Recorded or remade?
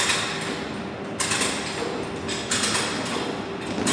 recorded